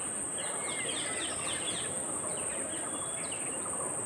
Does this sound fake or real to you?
real